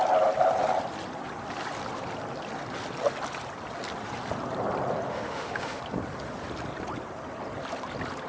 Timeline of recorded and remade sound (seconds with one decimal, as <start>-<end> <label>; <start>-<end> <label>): 0.0-5.1 recorded; 5.1-5.8 remade; 5.8-8.3 recorded